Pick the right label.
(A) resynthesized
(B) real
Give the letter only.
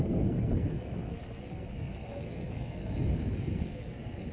A